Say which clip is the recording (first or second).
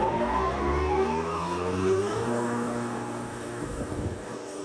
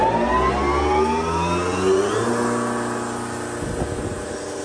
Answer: second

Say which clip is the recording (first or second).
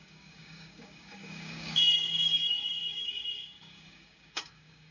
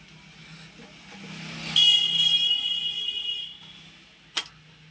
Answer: second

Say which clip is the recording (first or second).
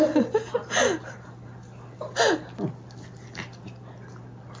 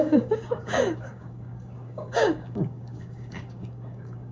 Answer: first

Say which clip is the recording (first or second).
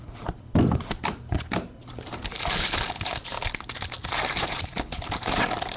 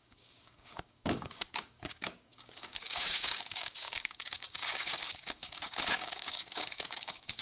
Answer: first